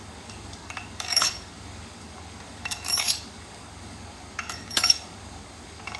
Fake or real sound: fake